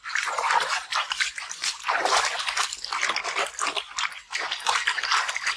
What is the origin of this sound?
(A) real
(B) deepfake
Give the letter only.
A